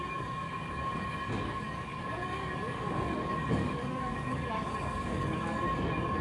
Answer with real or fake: fake